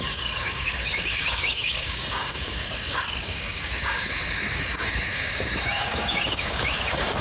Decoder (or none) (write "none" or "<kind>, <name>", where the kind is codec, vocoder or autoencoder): codec, DAC